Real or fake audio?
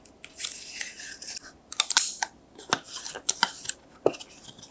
real